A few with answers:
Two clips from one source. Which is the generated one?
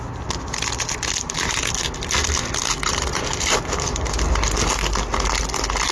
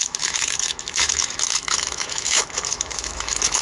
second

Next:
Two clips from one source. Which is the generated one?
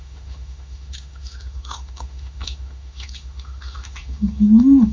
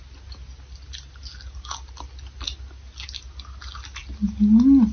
first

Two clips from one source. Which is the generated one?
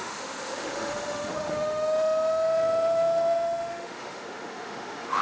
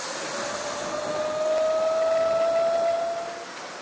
first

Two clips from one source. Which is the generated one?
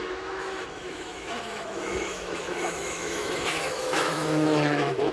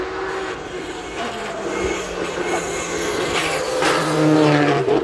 first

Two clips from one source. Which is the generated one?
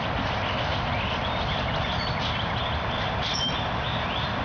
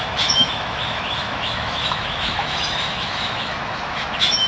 second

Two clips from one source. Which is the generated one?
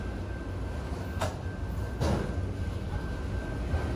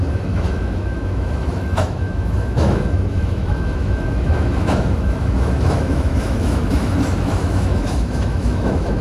second